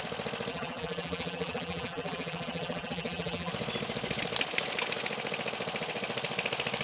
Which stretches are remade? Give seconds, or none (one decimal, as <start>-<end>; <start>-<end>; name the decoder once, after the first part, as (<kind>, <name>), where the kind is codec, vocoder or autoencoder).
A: 0.5-3.5 (vocoder, BigVGAN v2)